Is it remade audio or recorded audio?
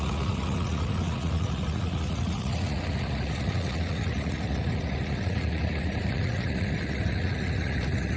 remade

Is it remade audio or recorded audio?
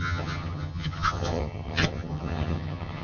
remade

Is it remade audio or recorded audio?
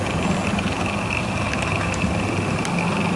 recorded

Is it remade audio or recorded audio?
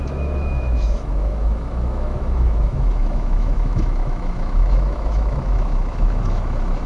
remade